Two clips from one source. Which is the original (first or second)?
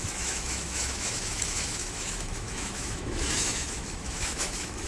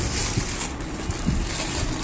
second